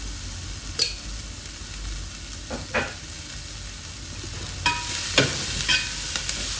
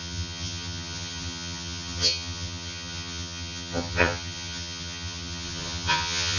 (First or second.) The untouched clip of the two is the first